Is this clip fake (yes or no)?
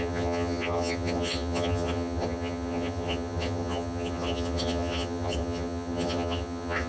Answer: yes